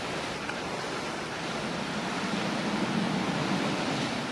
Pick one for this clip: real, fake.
real